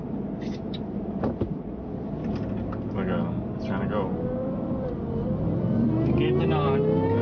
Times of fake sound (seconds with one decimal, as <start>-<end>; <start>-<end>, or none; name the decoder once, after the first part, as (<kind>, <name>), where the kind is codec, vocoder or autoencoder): 4.4-5.9 (vocoder, BigVGAN v2)